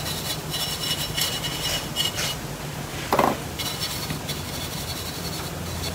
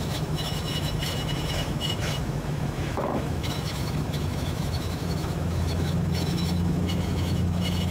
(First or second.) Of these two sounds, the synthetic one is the second